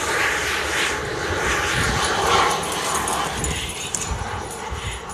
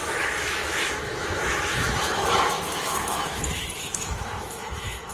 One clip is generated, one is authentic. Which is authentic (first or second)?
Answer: first